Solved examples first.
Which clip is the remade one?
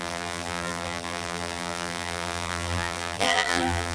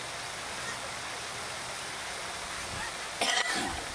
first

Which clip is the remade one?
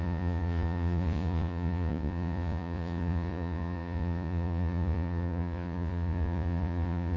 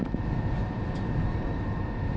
first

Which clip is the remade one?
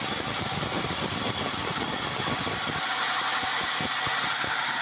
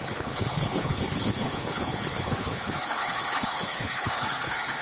second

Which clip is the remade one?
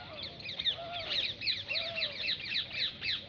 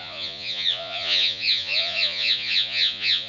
second